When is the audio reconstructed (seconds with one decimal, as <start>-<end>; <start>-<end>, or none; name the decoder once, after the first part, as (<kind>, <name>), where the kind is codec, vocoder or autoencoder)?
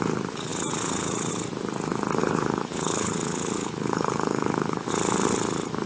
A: 2.2-4.9 (codec, HILCodec)